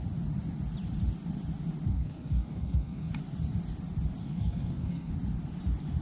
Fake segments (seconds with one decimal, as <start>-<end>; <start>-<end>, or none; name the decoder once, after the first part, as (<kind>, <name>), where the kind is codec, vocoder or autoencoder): 1.9-3.1 (codec, SNAC); 4.2-5.1

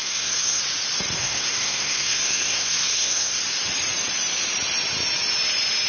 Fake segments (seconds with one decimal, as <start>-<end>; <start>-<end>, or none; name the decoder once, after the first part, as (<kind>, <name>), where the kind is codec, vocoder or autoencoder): 0.0-0.6 (codec, SNAC); 1.2-3.4

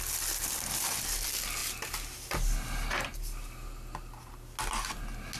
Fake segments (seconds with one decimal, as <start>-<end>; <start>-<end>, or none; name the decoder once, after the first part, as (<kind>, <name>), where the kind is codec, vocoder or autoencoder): none